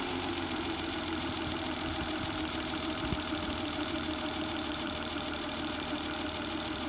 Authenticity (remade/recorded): remade